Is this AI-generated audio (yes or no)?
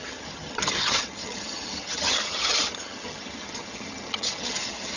yes